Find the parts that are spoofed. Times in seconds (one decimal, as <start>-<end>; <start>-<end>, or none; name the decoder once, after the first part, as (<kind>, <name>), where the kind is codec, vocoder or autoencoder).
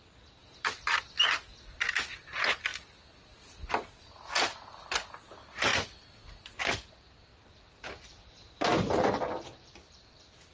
none